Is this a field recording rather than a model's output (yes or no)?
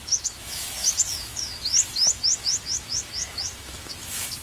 no